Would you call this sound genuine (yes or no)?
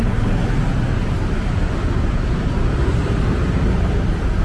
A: yes